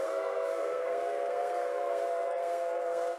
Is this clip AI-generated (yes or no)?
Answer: yes